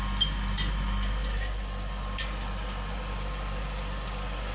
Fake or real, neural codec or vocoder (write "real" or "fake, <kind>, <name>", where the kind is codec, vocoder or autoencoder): real